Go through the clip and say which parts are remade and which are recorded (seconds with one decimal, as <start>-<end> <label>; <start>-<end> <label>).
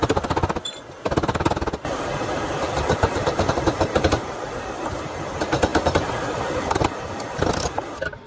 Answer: 0.0-2.9 recorded; 2.9-8.3 remade